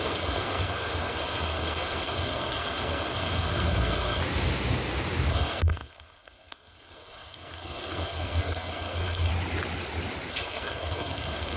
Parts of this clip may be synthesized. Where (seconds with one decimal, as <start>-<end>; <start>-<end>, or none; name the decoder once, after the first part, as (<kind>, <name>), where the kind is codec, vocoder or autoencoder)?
0.0-4.2 (codec, SNAC); 5.3-9.3; 10.3-11.6